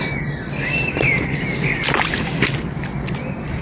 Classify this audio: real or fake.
real